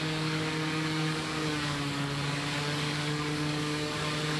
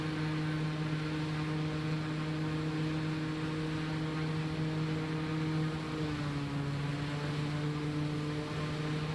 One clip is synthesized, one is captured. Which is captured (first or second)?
second